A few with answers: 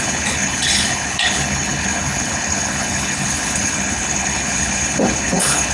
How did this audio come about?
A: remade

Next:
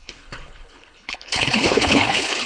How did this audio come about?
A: remade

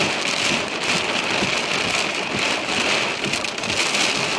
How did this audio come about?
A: recorded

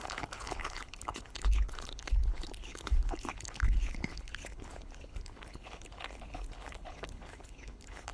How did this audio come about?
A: remade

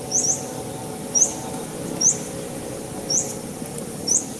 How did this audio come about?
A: recorded